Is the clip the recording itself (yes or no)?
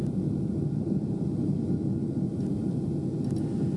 yes